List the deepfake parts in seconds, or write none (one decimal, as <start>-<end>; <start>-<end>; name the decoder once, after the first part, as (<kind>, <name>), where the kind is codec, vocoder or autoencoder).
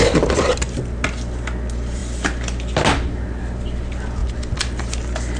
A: none